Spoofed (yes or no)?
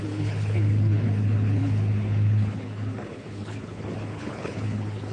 yes